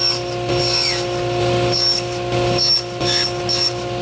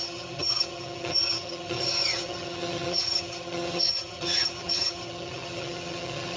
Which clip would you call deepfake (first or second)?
second